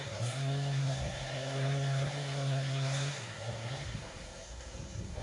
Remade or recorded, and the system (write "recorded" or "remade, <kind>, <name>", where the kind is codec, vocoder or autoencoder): remade, codec, SNAC